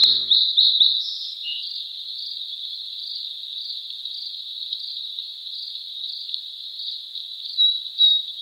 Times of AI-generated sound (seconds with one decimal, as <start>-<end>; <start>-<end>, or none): 0.0-0.8; 4.3-7.1